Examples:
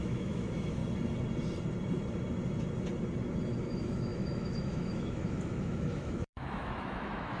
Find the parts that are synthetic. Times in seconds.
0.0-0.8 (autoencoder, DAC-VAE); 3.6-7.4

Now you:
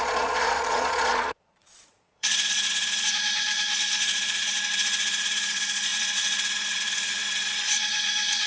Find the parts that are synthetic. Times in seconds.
0.0-8.5 (vocoder, Vocos)

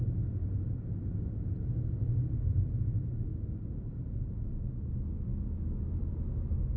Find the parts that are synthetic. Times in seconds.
none

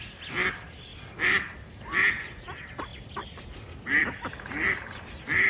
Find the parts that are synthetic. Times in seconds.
none

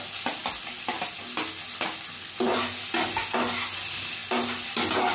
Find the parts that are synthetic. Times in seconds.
none